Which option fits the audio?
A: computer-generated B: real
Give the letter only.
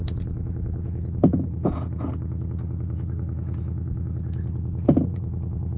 A